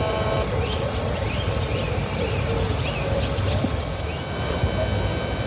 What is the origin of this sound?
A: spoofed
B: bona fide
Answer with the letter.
B